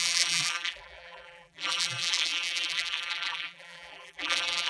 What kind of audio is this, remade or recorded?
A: remade